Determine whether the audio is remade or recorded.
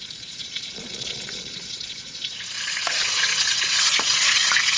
remade